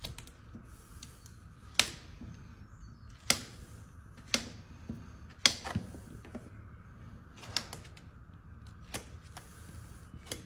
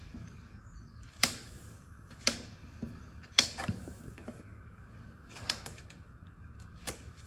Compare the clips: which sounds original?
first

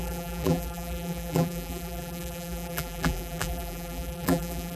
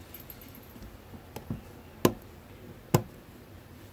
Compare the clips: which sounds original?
second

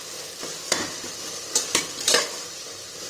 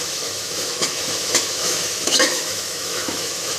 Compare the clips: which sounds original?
first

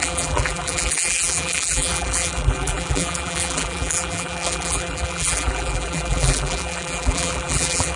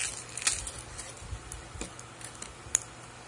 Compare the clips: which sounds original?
second